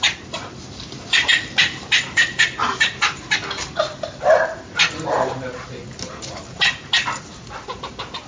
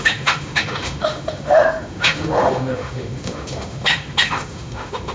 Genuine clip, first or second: first